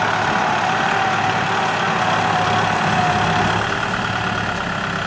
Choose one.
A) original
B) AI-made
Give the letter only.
A